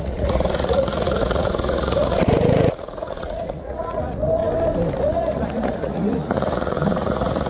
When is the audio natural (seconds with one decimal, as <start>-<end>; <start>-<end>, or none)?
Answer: 4.4-5.0